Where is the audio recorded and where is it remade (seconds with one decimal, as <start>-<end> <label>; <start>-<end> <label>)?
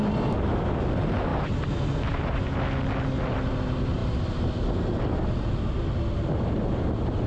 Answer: 0.0-7.3 recorded